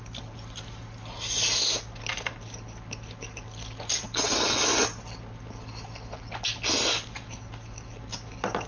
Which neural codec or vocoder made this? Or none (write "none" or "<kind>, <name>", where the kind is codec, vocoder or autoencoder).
none